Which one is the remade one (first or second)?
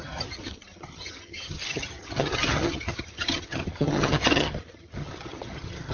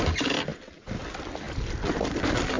first